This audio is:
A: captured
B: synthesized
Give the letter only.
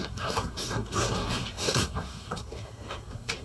B